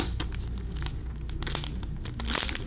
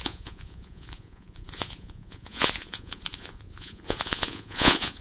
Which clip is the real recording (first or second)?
first